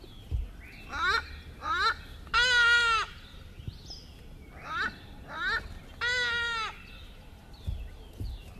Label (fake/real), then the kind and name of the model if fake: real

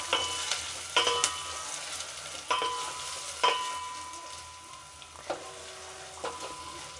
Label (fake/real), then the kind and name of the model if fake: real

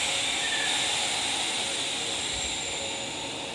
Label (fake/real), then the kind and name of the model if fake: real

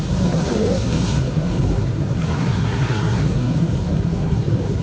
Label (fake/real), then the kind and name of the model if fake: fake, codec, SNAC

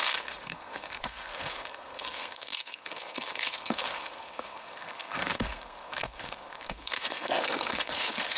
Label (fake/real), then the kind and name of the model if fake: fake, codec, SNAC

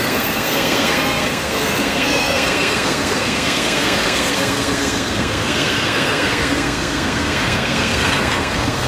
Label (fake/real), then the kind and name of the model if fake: fake, codec, SNAC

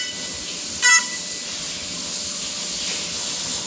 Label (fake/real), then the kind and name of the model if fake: real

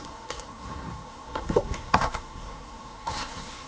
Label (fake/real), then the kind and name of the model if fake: fake, codec, SNAC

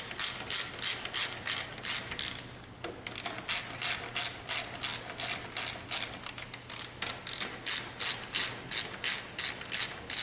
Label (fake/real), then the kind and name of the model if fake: real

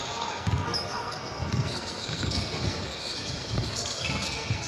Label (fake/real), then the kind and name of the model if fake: fake, codec, SNAC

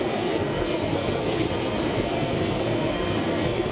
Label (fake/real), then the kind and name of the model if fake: fake, codec, SNAC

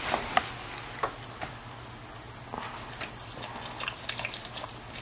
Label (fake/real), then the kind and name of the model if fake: real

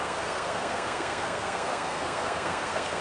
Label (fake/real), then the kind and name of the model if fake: fake, codec, SNAC